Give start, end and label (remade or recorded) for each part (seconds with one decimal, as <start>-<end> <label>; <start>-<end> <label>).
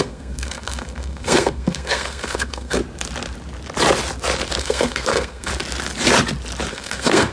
0.0-2.8 remade; 2.8-4.6 recorded; 4.6-5.5 remade; 5.5-6.7 recorded; 6.7-7.3 remade